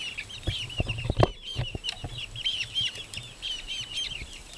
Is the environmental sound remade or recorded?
recorded